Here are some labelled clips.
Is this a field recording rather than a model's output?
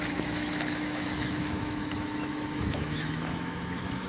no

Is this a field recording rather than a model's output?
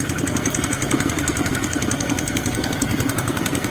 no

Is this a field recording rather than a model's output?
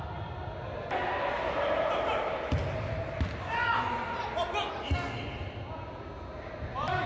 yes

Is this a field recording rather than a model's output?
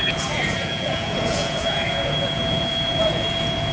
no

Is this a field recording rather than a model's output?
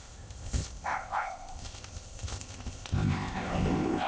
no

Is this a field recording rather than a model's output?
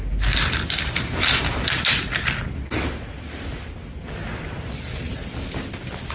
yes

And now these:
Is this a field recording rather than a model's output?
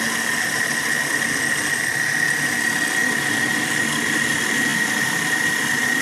yes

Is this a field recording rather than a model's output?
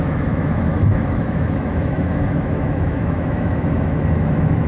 no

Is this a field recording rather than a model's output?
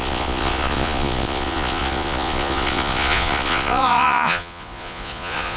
no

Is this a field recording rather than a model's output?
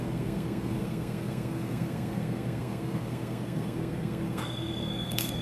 no